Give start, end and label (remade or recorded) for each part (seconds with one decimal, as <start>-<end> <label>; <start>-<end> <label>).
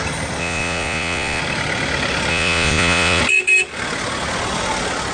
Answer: 0.0-0.4 recorded; 0.4-1.4 remade; 1.4-2.3 recorded; 2.3-3.2 remade; 3.2-5.1 recorded